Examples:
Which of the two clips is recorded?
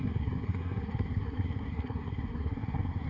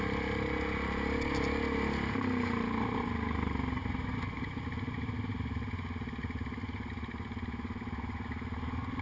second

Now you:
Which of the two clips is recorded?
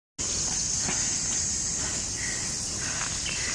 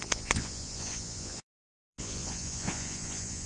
first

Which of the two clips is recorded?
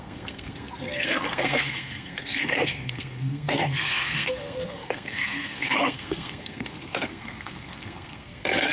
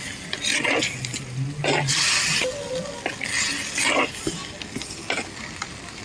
second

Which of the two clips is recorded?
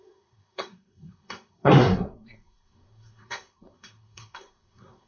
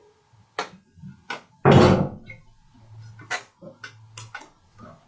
second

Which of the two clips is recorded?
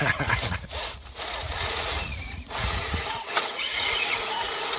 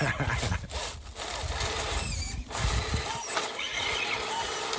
second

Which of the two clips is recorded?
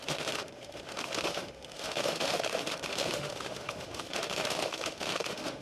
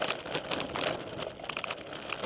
second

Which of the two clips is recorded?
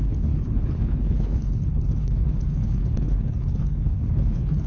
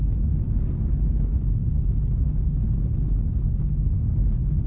second